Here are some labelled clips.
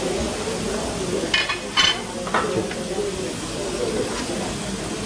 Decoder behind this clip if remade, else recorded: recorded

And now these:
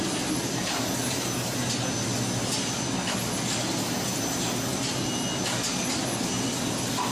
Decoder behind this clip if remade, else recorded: recorded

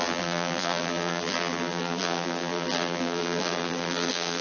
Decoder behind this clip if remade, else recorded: remade, vocoder, BigVGAN v2